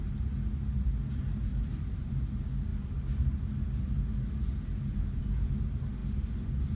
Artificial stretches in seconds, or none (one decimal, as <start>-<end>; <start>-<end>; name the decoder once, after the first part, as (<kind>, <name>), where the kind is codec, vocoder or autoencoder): 1.5-2.2 (vocoder, BigVGAN v2)

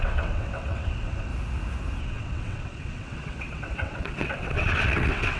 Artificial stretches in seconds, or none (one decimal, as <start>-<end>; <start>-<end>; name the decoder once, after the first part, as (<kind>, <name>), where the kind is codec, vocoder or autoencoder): 0.0-1.3 (vocoder, WaveNeXt); 2.0-5.4

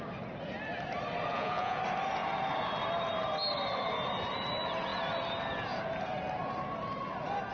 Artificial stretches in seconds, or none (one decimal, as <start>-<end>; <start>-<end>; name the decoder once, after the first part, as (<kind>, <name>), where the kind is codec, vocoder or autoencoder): 1.3-1.8 (vocoder, Vocos)

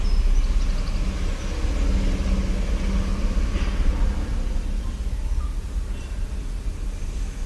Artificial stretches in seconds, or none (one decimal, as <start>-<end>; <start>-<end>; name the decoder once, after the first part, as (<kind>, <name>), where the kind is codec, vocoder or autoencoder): 3.1-4.8 (vocoder, BigVGAN v2)

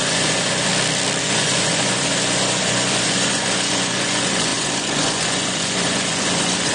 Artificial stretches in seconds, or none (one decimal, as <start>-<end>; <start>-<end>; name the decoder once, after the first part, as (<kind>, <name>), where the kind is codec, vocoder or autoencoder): 0.0-0.7 (vocoder, Vocos); 1.2-6.7